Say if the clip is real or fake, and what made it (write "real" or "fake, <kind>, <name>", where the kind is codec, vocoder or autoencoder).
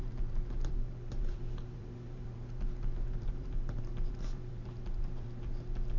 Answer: fake, vocoder, BigVGAN v2